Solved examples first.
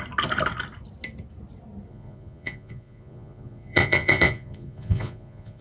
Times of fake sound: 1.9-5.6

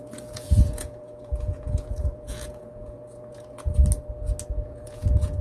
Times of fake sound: 0.0-3.8; 4.5-5.4